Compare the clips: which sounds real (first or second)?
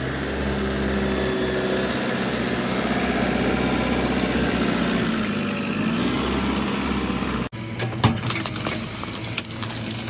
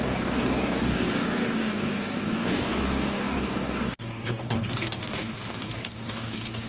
first